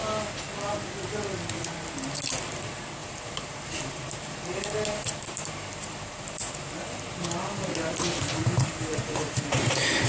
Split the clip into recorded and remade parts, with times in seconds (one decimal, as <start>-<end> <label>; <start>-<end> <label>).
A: 0.0-3.0 recorded; 3.0-6.7 remade; 6.7-8.4 recorded; 8.4-9.7 remade; 9.7-10.1 recorded